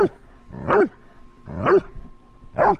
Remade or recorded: recorded